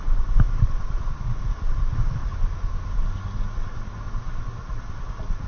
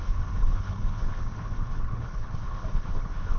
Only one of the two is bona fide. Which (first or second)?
first